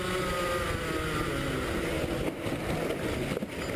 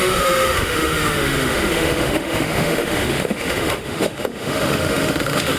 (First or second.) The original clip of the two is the first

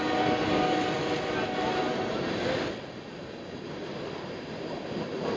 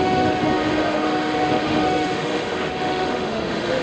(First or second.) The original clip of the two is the first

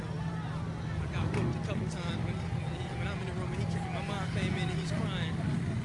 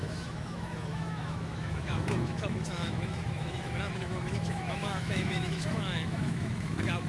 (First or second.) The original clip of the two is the first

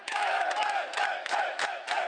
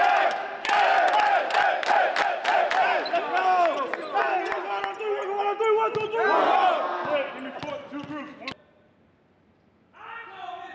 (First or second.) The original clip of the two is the second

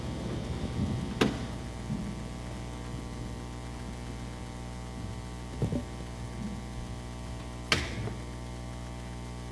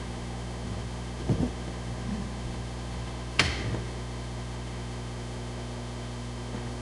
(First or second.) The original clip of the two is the first